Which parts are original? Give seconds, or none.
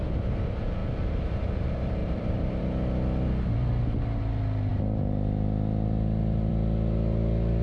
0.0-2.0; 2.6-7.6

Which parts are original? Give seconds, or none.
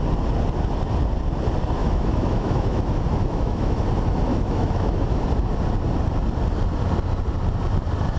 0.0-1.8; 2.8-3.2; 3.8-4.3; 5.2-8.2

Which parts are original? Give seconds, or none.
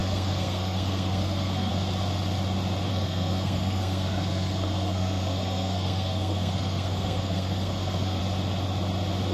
1.7-2.9; 8.2-9.3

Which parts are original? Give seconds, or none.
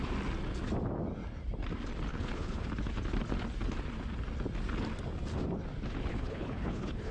0.0-2.1; 2.7-6.1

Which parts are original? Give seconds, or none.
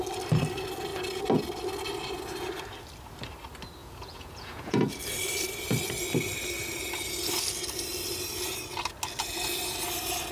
0.0-3.8; 5.0-10.3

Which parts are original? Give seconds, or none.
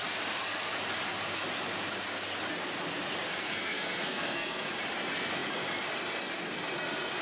0.0-3.4; 4.7-7.2